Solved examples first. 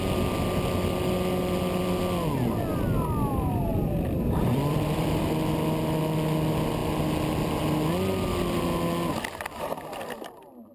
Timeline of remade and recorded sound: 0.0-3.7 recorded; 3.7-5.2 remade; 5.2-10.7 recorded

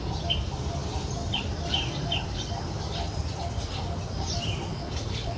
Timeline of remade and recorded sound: 0.0-4.7 recorded; 4.7-5.4 remade

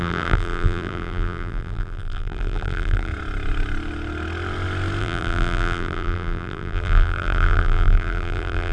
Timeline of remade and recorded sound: 0.0-3.1 remade; 3.1-5.0 recorded; 5.0-8.7 remade

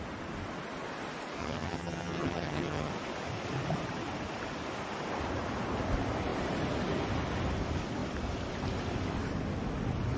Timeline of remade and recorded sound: 0.0-1.4 recorded; 1.4-2.9 remade; 2.9-10.2 recorded

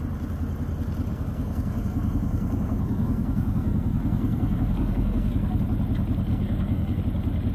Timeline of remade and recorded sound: 0.0-1.1 recorded; 1.1-5.6 remade; 5.6-6.3 recorded; 6.3-7.0 remade; 7.0-7.5 recorded

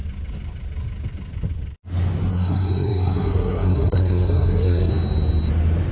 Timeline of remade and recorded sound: 0.0-2.3 recorded; 2.3-4.9 remade; 4.9-5.9 recorded

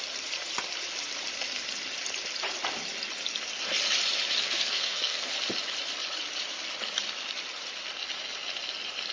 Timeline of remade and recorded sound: 0.0-4.4 recorded; 4.4-5.3 remade; 5.3-9.1 recorded